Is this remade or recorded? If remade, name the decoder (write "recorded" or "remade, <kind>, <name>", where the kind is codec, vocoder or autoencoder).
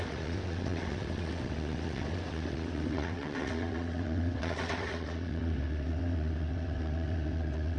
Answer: remade, vocoder, WaveNeXt